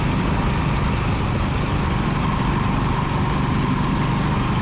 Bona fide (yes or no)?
yes